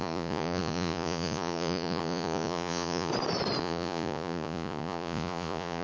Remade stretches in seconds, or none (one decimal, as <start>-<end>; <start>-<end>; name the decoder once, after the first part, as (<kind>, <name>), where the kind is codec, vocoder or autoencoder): 0.0-3.1 (vocoder, Vocos); 3.6-5.8